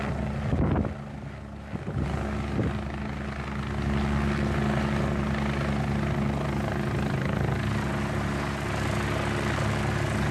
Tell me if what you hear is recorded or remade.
recorded